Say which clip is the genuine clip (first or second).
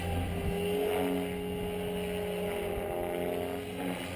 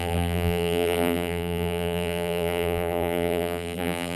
first